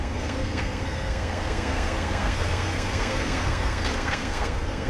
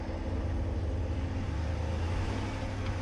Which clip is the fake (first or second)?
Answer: first